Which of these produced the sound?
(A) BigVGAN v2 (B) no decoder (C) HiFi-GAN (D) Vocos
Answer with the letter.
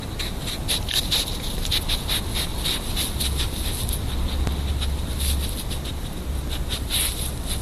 B